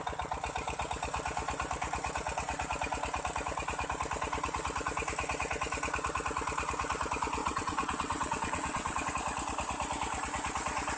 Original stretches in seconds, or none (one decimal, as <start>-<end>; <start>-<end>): 0.0-7.4; 9.1-11.0